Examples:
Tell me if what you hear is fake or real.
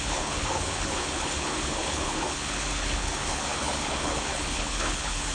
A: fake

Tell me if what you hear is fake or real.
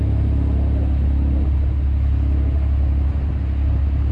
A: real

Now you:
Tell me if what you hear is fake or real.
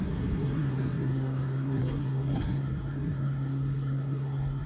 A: fake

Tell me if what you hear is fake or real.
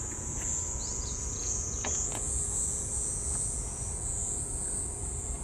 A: fake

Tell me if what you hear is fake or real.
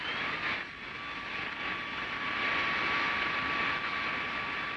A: real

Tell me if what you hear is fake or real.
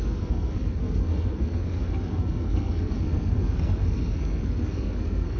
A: fake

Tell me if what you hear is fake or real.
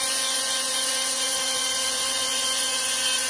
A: fake